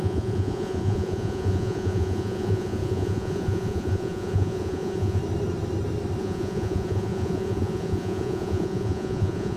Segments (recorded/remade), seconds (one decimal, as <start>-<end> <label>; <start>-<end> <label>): 0.0-5.2 remade; 5.2-6.2 recorded; 6.2-9.6 remade